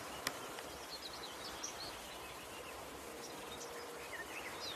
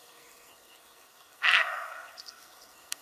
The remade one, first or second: second